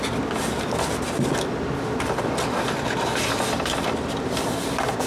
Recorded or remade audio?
recorded